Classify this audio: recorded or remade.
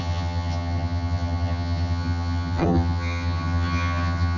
remade